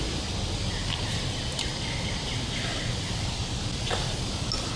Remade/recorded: recorded